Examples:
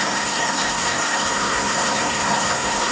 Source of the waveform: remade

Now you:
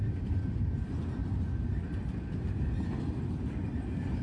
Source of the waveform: recorded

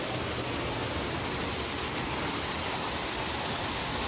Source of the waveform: recorded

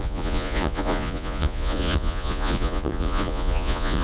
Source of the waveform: remade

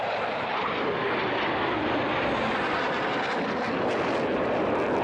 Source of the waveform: recorded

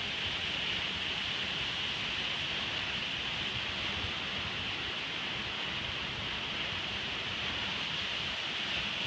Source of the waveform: recorded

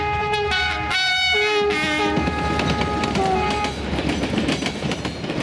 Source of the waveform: recorded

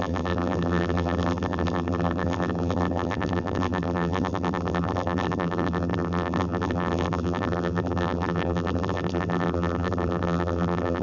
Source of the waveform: remade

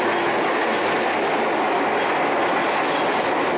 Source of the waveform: recorded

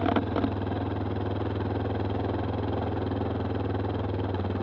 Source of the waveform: recorded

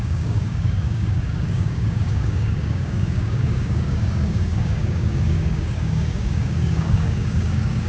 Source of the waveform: remade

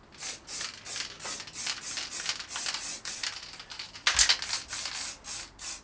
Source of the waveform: recorded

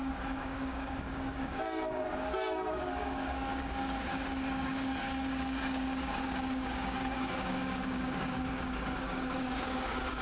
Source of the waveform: remade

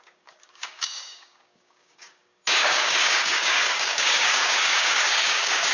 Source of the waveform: remade